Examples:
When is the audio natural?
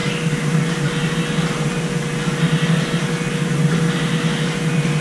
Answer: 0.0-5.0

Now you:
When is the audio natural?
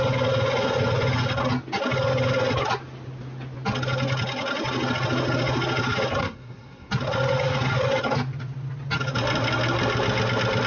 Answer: 0.0-6.2; 6.9-10.7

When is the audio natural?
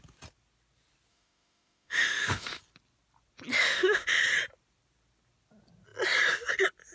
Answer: 0.0-1.1; 2.6-3.6; 4.2-6.9